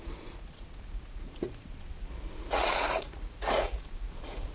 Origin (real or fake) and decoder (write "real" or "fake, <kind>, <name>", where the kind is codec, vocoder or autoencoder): fake, vocoder, Vocos